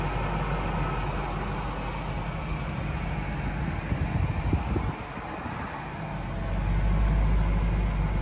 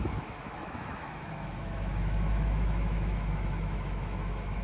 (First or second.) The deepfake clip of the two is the second